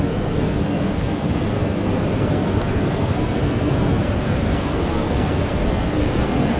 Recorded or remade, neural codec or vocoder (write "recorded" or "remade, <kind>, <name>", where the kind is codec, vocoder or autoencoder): remade, codec, SNAC